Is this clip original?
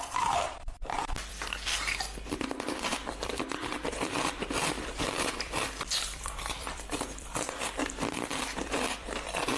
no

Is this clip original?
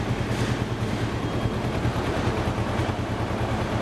yes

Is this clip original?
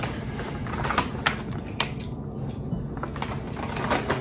yes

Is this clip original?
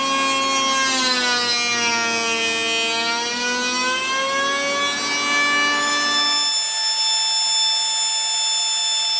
yes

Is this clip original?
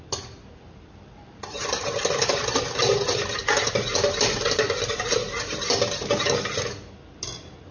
yes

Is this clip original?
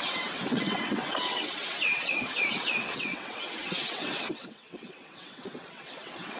no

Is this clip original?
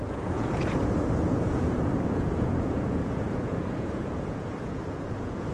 no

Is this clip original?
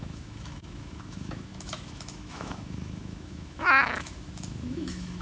no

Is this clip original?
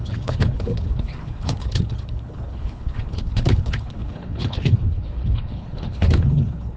no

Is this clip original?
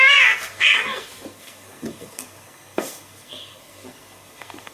no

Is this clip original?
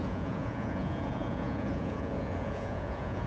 no